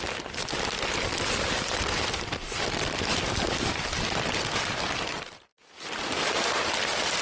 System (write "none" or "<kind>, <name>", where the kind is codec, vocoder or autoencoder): vocoder, BigVGAN v2